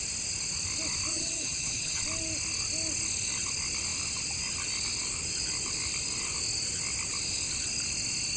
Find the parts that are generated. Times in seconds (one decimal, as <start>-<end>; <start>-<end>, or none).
1.1-2.0